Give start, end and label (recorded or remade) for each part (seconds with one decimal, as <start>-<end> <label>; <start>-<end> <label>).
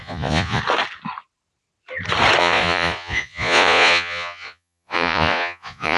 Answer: 0.0-0.6 remade; 0.6-2.4 recorded; 2.4-6.0 remade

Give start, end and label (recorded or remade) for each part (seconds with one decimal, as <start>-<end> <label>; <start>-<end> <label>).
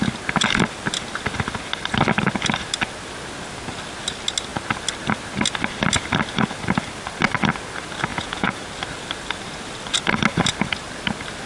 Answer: 0.0-8.1 recorded; 8.1-8.6 remade; 8.6-11.5 recorded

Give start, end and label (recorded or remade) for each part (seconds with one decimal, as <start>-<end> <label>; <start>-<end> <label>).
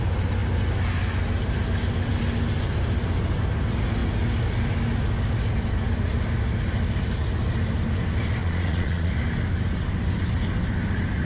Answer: 0.0-8.4 recorded; 8.4-9.1 remade; 9.1-11.2 recorded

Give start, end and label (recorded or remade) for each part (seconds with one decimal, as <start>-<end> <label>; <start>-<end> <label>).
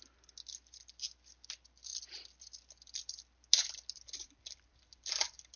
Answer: 0.0-5.6 recorded